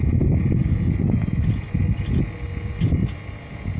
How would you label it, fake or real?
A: real